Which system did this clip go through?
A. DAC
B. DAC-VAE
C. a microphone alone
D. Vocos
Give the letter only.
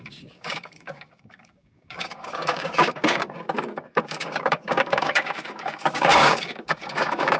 A